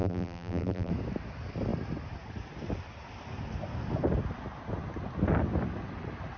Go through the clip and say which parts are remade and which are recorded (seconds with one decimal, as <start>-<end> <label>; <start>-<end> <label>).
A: 0.0-0.9 remade; 0.9-6.4 recorded